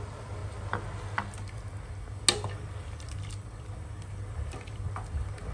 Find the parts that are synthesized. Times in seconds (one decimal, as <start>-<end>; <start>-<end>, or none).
none